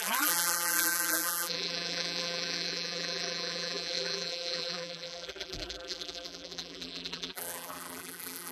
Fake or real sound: fake